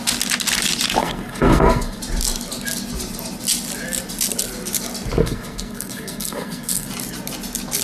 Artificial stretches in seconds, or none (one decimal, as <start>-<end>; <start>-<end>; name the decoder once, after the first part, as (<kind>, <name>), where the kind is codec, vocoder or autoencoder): 1.0-2.0 (codec, SNAC); 5.2-6.9